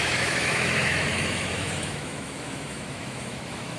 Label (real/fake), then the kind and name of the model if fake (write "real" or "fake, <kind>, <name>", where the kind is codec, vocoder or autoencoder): fake, autoencoder, DAC-VAE